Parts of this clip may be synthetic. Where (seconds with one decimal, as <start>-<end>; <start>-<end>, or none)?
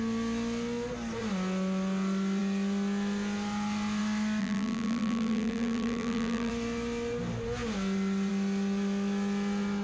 4.4-6.5